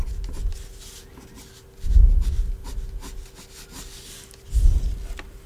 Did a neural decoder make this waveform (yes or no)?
no